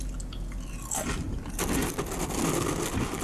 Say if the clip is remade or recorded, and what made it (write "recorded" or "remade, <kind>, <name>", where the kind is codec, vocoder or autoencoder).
recorded